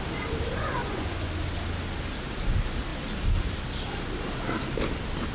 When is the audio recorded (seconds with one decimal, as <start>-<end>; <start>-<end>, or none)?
0.0-0.8; 1.3-5.3